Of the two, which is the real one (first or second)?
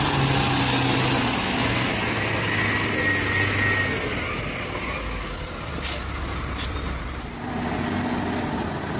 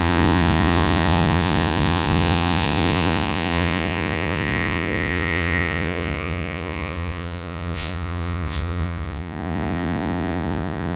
first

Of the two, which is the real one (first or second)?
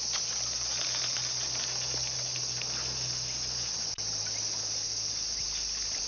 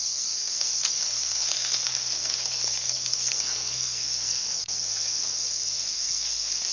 first